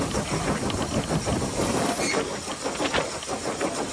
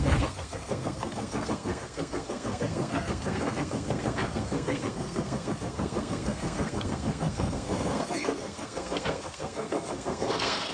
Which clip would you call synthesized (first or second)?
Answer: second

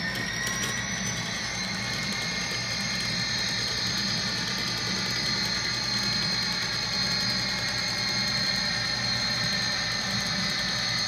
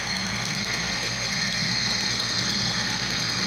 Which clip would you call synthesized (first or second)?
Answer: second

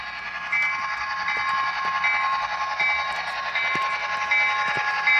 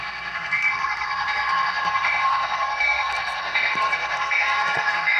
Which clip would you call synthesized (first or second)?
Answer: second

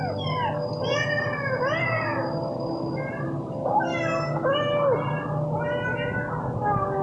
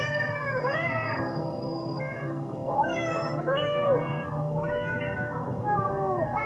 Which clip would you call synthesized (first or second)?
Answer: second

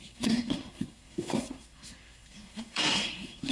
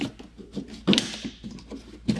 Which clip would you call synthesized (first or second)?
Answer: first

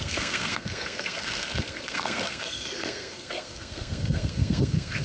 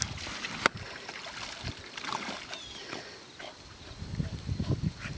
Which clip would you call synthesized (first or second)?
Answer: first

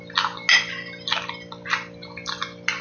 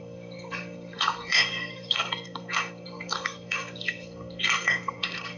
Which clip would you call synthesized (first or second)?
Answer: second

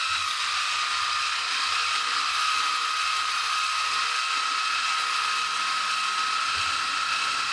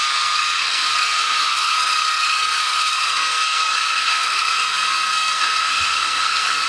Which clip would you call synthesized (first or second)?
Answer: second